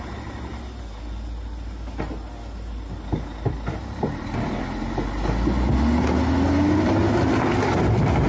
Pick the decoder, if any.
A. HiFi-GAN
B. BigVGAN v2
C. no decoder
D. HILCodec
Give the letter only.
C